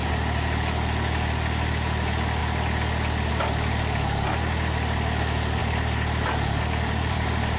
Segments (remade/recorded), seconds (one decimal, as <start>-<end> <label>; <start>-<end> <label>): 0.0-5.6 recorded; 5.6-7.6 remade